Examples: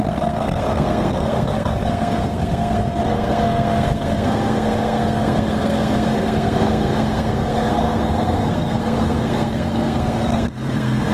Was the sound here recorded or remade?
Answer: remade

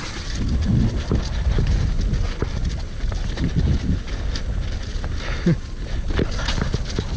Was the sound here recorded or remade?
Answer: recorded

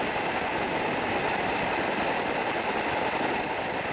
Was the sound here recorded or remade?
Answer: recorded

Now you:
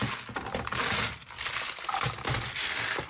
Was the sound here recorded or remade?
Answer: recorded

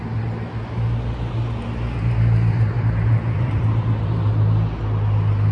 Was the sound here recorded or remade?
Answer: recorded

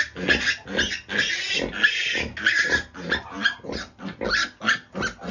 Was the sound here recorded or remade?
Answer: recorded